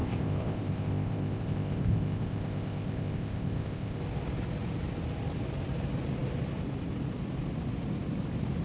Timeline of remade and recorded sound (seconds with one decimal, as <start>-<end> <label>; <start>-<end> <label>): 0.0-4.0 remade; 4.0-8.6 recorded